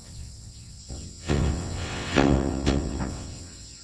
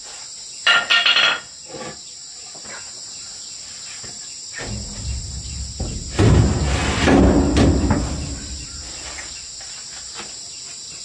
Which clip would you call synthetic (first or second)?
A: first